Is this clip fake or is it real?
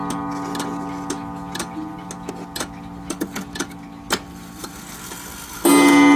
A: real